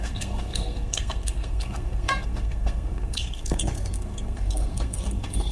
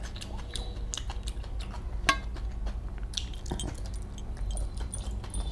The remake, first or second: first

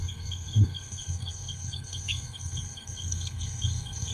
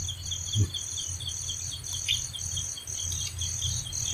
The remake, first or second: first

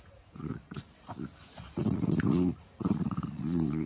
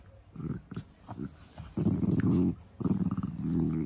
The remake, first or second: first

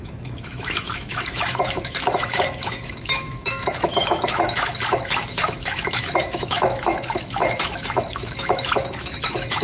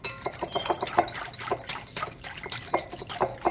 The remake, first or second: first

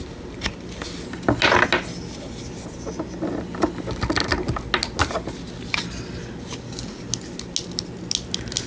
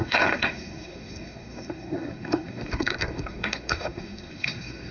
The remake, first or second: second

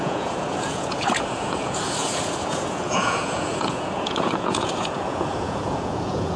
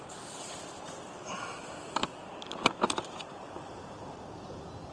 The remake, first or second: first